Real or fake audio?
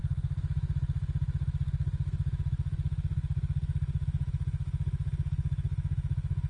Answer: fake